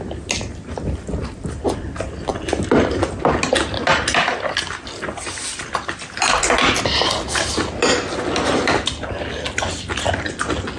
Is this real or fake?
real